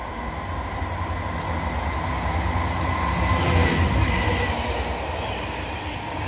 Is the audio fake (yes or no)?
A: no